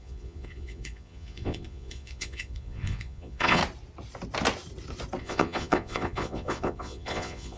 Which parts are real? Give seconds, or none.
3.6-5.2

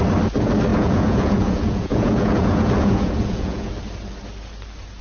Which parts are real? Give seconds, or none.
0.0-0.7; 3.7-5.0

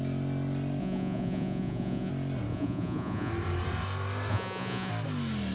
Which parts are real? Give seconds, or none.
0.0-0.8; 2.1-2.5; 3.3-4.3; 4.9-5.5

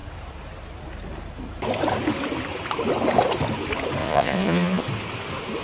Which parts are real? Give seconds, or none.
0.0-4.0; 4.8-5.6

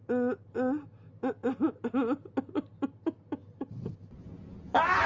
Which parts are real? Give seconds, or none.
0.0-5.1

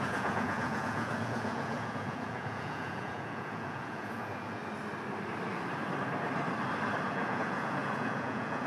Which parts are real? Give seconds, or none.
4.6-7.1

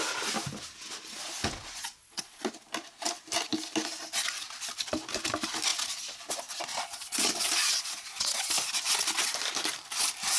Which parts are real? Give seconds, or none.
0.0-2.0; 2.5-6.7; 8.5-10.4